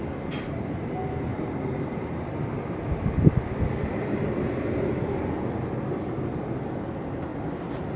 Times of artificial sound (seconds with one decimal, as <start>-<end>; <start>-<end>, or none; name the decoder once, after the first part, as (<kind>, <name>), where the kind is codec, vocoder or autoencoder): 1.3-6.1 (vocoder, BigVGAN v2); 7.3-8.0